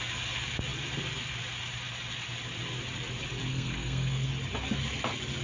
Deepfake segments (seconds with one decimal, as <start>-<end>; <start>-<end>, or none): 3.5-4.3